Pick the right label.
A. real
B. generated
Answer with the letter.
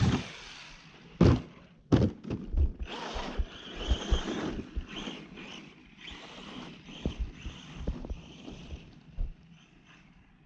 A